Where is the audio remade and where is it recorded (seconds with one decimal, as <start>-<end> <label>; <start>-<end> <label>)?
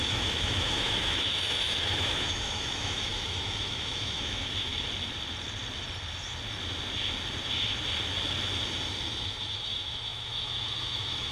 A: 0.0-4.7 remade; 4.7-9.5 recorded; 9.5-11.3 remade